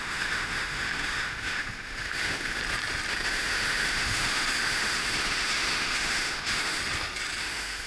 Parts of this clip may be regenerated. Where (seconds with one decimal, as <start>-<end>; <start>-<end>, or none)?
0.0-2.6; 3.1-6.8; 7.4-7.9